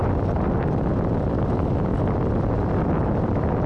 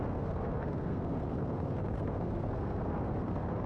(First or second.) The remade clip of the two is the second